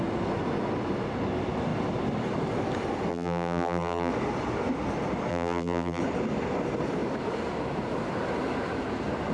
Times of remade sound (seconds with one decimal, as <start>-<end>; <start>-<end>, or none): 3.1-4.1; 5.3-6.0